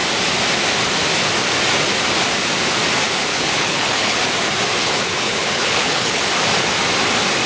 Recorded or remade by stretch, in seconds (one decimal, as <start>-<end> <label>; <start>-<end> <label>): 0.0-3.3 recorded; 3.3-4.2 remade; 4.2-4.8 recorded; 4.8-6.2 remade; 6.2-7.5 recorded